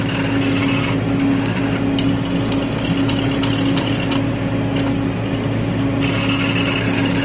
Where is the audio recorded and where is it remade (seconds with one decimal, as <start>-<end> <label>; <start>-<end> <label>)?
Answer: 0.0-0.6 recorded; 0.6-4.4 remade; 4.4-7.2 recorded

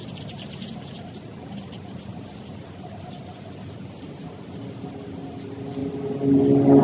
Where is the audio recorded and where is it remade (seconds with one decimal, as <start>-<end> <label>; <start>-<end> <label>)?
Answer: 0.0-6.8 recorded

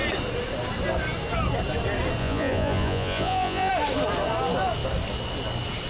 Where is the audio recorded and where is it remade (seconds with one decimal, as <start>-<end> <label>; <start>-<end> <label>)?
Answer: 0.0-2.2 recorded; 2.2-3.7 remade; 3.7-5.9 recorded

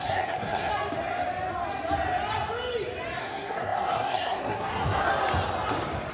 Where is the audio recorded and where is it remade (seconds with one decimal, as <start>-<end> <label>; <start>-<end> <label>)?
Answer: 0.0-0.7 remade; 0.7-3.2 recorded; 3.2-5.1 remade; 5.1-6.1 recorded

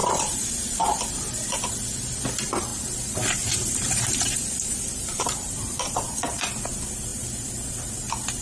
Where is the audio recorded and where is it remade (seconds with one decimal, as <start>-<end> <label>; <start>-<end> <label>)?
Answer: 0.0-0.9 remade; 0.9-2.7 recorded; 2.7-6.6 remade; 6.6-8.4 recorded